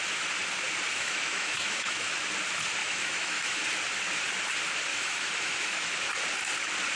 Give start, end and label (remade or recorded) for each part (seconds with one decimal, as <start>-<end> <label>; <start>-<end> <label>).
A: 0.0-0.9 recorded; 0.9-2.1 remade; 2.1-2.8 recorded; 2.8-3.6 remade; 3.6-4.9 recorded; 4.9-5.9 remade; 5.9-7.0 recorded